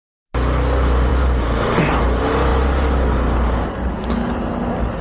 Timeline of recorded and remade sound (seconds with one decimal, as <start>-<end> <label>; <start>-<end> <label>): 0.0-5.0 recorded